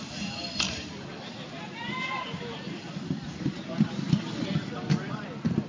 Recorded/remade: remade